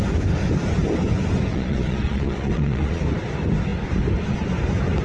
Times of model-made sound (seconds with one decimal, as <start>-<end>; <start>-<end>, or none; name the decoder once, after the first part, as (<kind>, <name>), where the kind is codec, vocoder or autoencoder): 1.5-3.0 (vocoder, Vocos)